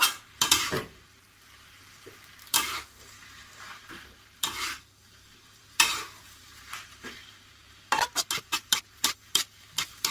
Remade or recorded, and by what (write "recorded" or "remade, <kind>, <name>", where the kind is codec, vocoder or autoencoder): remade, vocoder, BigVGAN v2